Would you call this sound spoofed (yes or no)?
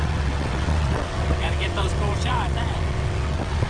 yes